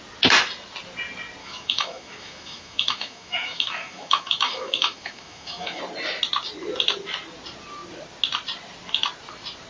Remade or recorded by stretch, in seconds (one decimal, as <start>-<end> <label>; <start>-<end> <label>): 0.0-1.4 recorded; 1.4-5.8 remade; 5.8-9.7 recorded